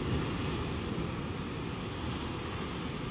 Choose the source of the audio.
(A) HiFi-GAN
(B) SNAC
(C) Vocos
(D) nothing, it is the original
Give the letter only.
D